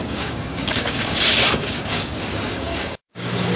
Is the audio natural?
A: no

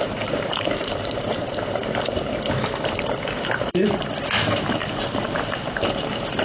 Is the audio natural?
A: no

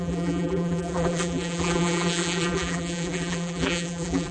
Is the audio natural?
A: no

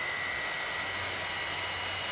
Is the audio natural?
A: yes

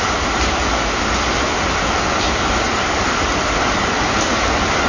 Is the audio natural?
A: yes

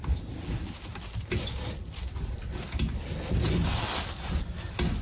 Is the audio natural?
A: yes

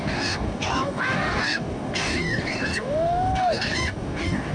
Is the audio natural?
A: no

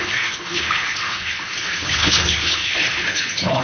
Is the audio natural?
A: no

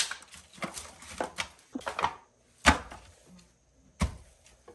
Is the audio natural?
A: yes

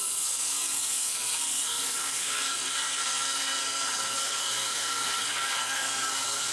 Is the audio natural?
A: no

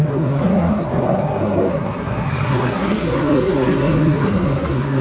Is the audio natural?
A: no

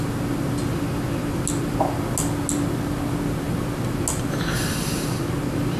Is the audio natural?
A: yes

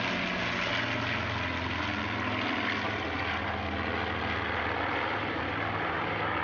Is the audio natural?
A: yes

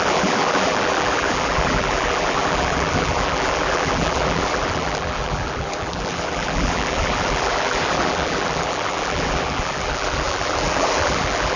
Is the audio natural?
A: no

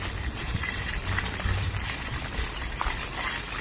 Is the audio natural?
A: yes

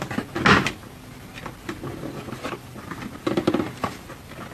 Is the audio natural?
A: yes